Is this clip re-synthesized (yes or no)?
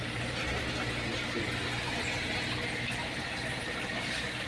no